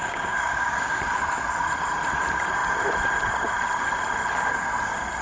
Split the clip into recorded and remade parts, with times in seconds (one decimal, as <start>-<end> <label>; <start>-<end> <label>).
0.0-1.0 remade; 1.0-5.2 recorded